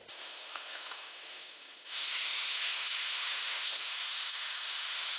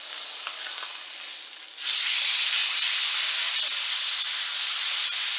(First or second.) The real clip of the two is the second